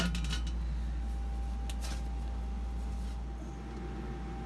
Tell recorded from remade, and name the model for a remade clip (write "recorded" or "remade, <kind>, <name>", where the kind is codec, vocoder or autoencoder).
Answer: recorded